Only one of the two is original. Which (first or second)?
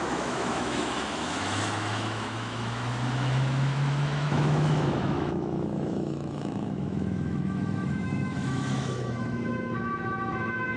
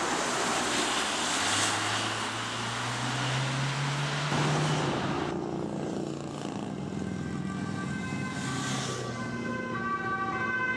second